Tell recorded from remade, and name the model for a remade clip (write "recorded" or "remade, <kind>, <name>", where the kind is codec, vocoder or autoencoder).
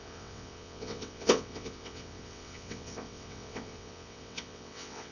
remade, vocoder, WaveNeXt